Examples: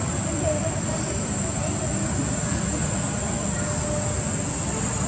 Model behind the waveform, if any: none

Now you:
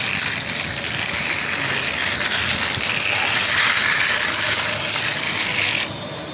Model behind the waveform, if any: none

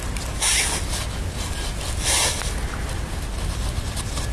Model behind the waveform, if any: none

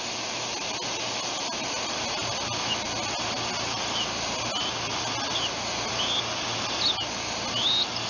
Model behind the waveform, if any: none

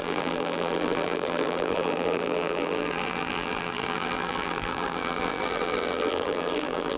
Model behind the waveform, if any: vocoder, BigVGAN v2